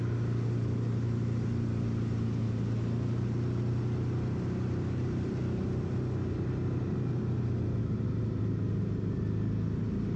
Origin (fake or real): real